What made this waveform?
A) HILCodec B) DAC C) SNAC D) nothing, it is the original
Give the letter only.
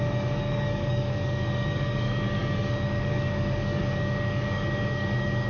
B